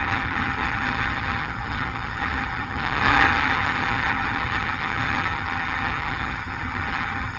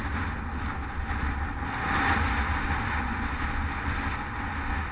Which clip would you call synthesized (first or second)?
first